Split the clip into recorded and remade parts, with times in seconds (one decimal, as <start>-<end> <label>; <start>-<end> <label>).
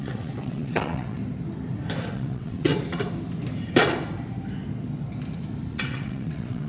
0.0-1.2 remade; 1.2-2.1 recorded; 2.1-2.7 remade; 2.7-5.7 recorded; 5.7-6.7 remade